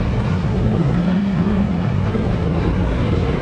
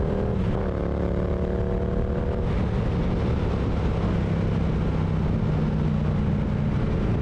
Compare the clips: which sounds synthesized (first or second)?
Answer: first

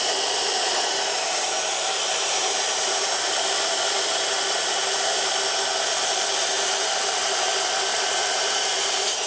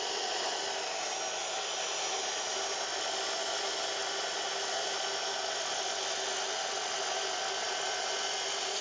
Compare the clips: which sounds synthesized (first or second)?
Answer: first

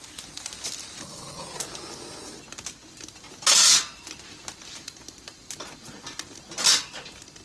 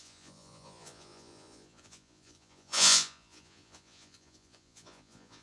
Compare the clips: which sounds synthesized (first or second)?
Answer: second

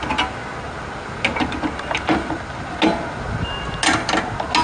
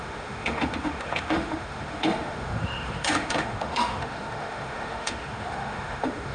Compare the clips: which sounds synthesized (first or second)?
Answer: second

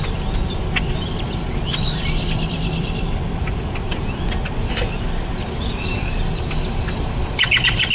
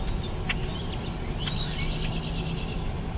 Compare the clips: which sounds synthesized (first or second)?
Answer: first